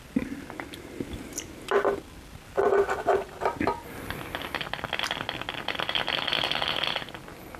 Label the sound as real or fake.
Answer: real